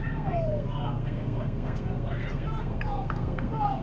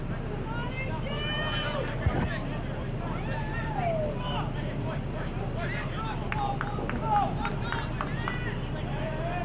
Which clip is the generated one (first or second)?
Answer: first